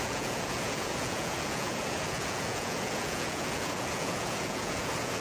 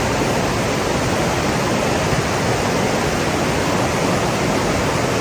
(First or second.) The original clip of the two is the second